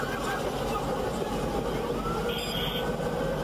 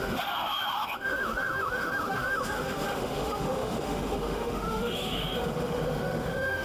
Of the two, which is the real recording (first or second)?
first